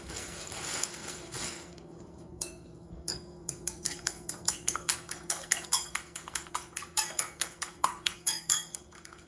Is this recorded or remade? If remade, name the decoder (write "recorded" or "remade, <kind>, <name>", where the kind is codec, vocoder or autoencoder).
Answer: remade, codec, SNAC